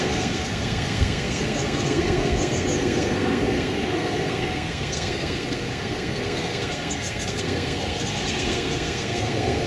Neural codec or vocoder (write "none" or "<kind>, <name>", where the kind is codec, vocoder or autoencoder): codec, SNAC